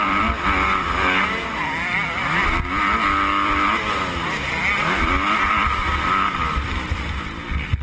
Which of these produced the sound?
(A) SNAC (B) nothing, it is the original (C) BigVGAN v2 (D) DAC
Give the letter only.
B